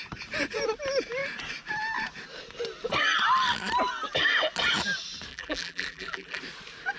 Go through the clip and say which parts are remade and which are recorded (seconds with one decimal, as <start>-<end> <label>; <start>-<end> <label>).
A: 0.0-5.3 recorded; 5.3-6.4 remade; 6.4-7.0 recorded